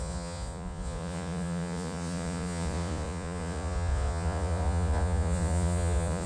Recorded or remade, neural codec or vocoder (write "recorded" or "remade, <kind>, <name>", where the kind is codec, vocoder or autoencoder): remade, vocoder, Vocos